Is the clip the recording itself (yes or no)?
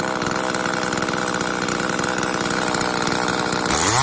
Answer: yes